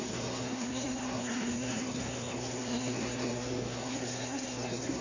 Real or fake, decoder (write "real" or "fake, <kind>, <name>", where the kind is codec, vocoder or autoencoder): fake, codec, SNAC